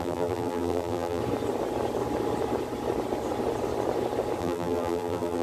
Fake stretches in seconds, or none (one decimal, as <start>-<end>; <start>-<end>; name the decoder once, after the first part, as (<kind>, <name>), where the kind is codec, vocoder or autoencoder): 0.0-1.2 (vocoder, BigVGAN v2); 4.4-5.4

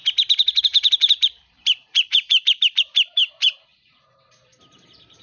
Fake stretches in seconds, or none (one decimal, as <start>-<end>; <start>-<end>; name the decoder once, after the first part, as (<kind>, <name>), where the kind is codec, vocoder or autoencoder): 0.6-5.2 (vocoder, BigVGAN v2)